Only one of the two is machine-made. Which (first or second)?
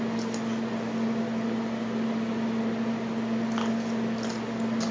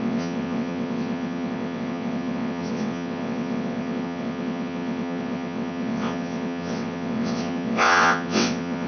second